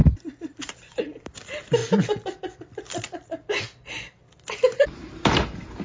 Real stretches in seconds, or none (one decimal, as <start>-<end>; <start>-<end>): 1.8-4.6